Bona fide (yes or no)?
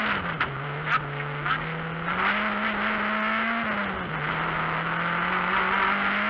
yes